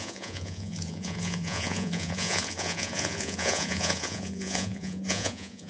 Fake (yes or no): yes